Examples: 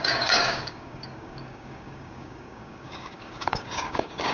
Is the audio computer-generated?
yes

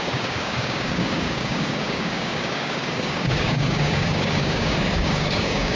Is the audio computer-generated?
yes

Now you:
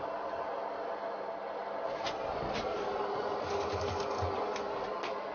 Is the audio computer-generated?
no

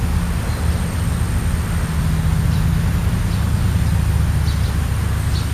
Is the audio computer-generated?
no